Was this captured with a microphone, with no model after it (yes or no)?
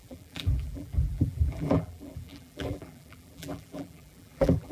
no